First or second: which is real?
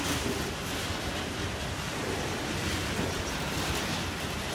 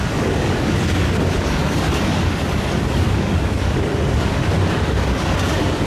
first